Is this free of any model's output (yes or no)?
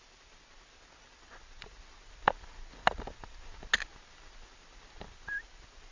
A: yes